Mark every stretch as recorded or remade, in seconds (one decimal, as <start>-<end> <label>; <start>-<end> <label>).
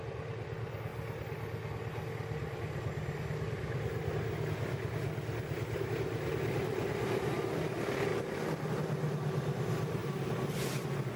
0.0-8.1 recorded; 8.1-8.7 remade; 8.7-10.0 recorded; 10.0-10.5 remade; 10.5-11.2 recorded